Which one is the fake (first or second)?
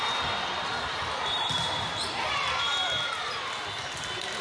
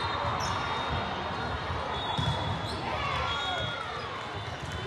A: first